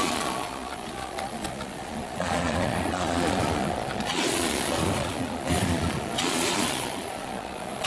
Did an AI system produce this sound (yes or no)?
yes